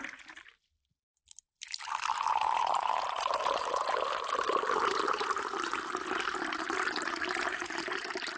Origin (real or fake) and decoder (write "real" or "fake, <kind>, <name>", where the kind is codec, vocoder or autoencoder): fake, vocoder, BigVGAN v2